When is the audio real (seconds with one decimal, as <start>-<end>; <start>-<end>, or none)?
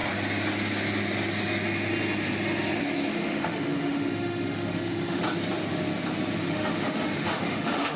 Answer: 0.0-3.1; 5.2-6.4